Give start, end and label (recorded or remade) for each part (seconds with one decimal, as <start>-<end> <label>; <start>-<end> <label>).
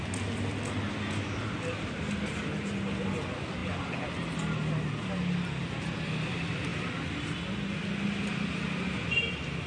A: 0.0-9.7 recorded